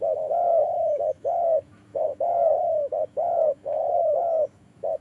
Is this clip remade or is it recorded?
remade